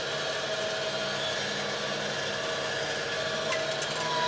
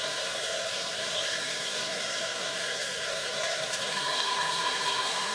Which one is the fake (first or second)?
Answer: second